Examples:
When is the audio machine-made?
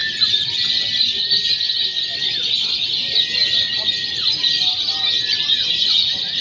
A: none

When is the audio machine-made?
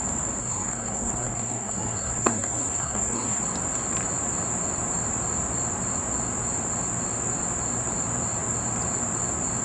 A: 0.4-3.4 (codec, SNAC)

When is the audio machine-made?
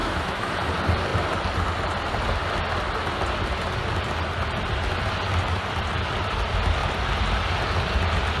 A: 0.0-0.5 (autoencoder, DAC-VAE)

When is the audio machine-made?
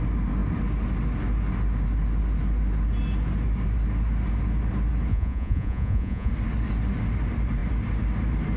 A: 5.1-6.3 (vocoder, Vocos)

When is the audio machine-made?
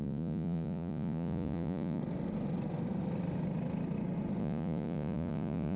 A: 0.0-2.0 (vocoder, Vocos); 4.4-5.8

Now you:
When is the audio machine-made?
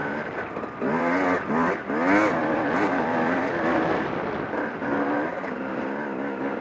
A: 0.0-1.0 (vocoder, BigVGAN v2); 2.4-4.6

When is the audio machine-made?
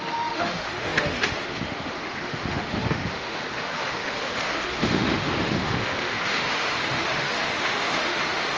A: 0.0-8.6 (autoencoder, DAC-VAE)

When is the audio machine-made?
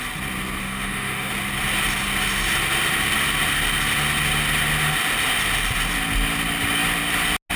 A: 0.6-1.3 (autoencoder, DAC-VAE)